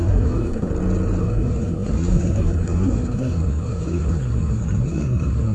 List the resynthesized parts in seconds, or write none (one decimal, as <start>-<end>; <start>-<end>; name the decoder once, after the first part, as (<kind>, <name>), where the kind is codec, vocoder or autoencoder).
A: 0.0-0.7 (codec, SNAC); 1.2-5.5